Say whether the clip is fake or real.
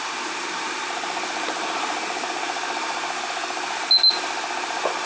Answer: real